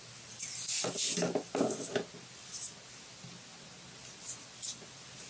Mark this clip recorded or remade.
recorded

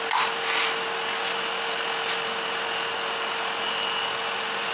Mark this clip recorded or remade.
recorded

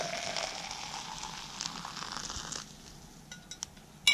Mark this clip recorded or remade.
recorded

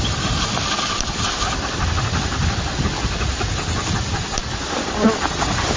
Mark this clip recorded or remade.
recorded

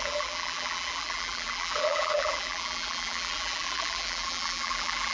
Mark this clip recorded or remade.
remade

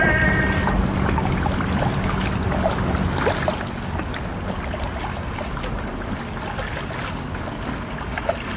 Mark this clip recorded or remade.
recorded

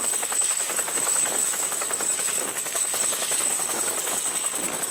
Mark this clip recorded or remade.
remade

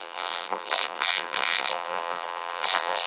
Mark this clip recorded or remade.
remade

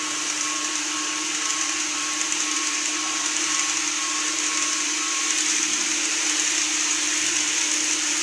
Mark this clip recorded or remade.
remade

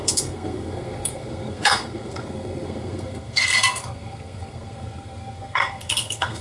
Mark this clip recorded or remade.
remade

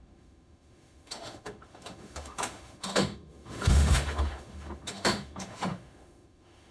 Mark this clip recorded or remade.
remade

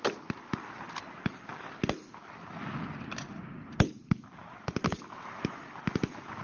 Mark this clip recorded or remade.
recorded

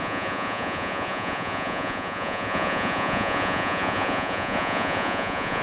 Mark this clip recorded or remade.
remade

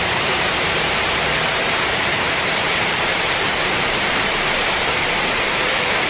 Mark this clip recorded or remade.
remade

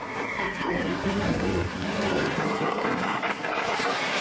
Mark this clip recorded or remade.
remade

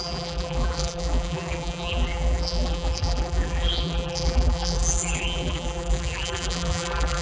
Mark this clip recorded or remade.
remade